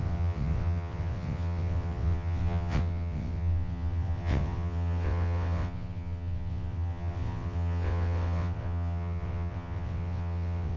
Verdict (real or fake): fake